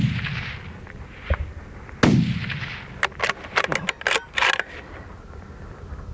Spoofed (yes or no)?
no